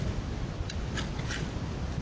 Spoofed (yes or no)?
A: no